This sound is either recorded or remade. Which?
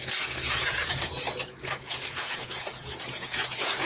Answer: remade